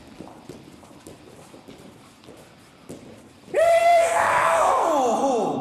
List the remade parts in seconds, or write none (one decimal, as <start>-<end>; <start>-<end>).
3.8-4.9